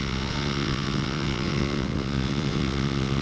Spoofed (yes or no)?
yes